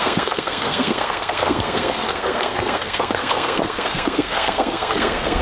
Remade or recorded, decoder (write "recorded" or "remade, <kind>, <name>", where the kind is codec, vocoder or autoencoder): remade, codec, SNAC